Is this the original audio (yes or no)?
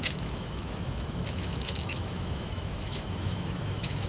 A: no